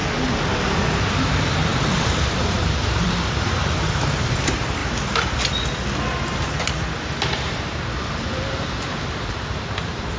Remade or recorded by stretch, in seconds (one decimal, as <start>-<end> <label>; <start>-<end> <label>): 0.0-1.1 recorded; 1.1-4.8 remade; 4.8-8.0 recorded; 8.0-10.2 remade

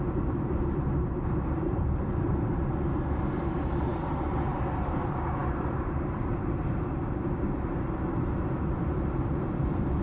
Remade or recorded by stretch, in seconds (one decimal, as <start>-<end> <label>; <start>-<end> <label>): 0.0-10.0 remade

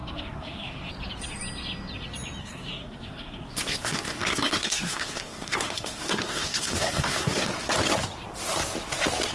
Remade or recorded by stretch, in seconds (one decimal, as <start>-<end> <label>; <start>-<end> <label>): 0.0-0.9 remade; 0.9-2.4 recorded; 2.4-7.5 remade; 7.5-9.3 recorded

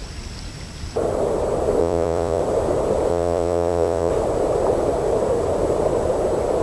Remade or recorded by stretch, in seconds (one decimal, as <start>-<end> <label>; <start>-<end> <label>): 0.0-1.8 recorded; 1.8-2.4 remade; 2.4-3.1 recorded; 3.1-4.1 remade; 4.1-6.6 recorded